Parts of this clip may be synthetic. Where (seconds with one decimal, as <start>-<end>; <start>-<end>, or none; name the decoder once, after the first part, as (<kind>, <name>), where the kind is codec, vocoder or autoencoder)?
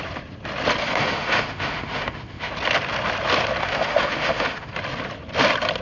0.8-2.5 (autoencoder, DAC-VAE); 3.6-4.7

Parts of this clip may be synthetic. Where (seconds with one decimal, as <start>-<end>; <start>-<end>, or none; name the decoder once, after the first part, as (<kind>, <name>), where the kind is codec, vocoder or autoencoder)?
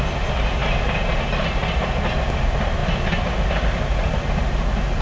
none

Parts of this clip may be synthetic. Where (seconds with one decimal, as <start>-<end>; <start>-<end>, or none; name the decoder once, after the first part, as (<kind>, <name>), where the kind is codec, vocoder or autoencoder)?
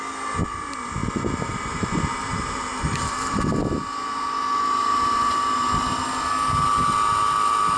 1.0-3.5 (vocoder, BigVGAN v2)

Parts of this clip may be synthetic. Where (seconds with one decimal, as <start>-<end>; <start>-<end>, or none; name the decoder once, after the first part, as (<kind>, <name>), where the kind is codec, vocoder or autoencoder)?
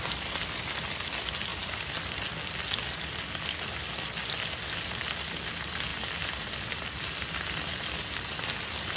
5.9-6.8 (vocoder, BigVGAN v2)